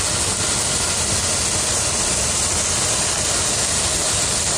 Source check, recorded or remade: recorded